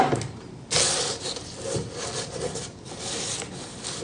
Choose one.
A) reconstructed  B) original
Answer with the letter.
B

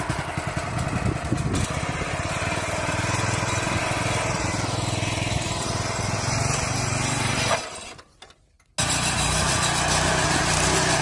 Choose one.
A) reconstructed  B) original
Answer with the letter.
B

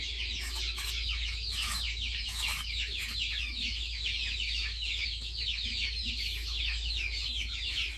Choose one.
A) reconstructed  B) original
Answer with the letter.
A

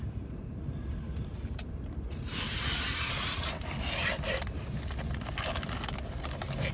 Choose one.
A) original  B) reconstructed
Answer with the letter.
A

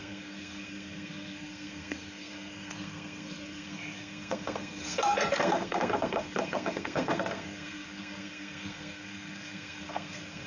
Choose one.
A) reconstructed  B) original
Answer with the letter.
A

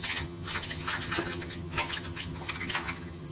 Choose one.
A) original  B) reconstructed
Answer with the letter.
B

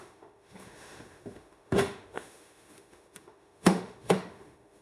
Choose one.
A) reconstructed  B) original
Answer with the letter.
A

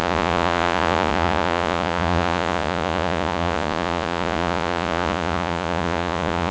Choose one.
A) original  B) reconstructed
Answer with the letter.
B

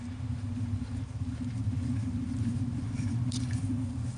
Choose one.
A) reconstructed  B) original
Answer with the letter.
A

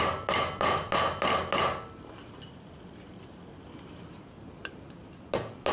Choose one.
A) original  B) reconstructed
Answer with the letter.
A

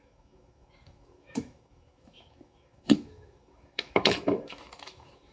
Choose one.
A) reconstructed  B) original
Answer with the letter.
A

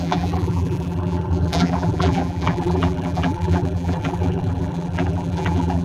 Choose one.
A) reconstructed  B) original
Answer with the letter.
A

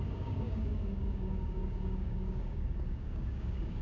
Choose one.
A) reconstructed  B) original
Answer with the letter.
A